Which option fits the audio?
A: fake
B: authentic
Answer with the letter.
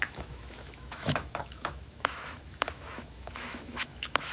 A